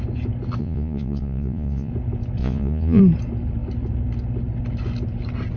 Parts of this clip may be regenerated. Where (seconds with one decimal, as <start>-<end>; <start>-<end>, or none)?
0.6-1.9; 2.4-3.0

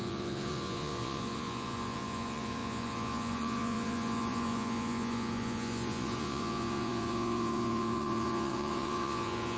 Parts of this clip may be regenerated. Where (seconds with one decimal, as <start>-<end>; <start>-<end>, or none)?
0.0-9.6